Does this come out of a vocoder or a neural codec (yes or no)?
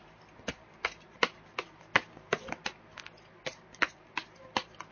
yes